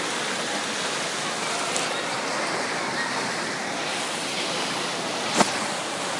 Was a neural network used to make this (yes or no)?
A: no